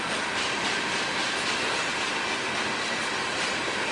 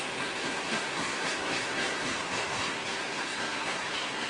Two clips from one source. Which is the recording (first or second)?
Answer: first